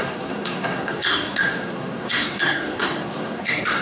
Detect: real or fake fake